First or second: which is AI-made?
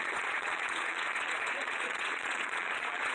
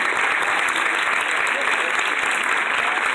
first